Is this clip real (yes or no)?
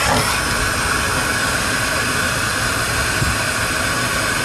yes